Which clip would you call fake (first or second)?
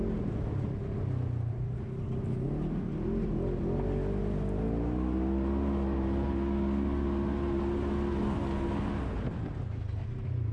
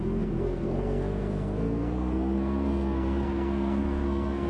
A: second